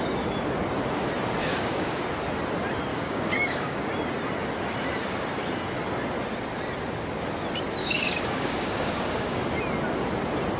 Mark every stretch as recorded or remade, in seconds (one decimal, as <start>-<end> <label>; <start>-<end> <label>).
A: 0.0-1.4 recorded; 1.4-2.0 remade; 2.0-2.9 recorded; 2.9-3.9 remade; 3.9-7.8 recorded; 7.8-9.4 remade; 9.4-10.6 recorded